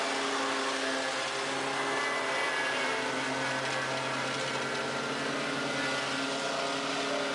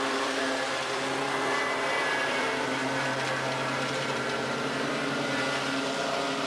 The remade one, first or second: second